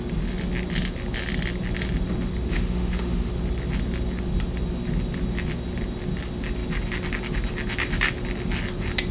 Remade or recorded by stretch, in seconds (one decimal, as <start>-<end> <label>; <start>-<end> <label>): 0.0-2.5 recorded; 2.5-3.3 remade; 3.3-9.1 recorded

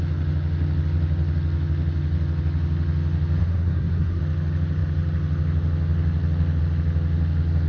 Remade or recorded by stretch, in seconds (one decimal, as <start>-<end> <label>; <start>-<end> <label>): 0.0-3.4 recorded; 3.4-4.2 remade; 4.2-7.7 recorded